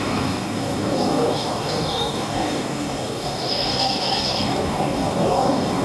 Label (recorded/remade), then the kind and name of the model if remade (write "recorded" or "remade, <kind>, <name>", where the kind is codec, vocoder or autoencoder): remade, codec, DAC